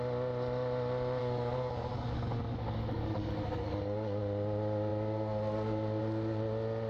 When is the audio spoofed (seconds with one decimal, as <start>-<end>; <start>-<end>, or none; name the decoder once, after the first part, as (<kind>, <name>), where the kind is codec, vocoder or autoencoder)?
1.2-4.2 (codec, DAC)